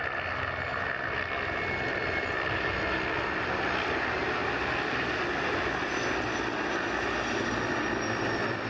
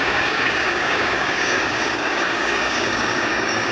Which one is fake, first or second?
second